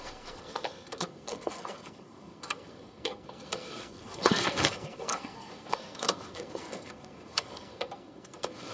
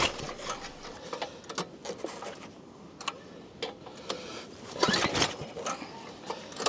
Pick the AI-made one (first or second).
first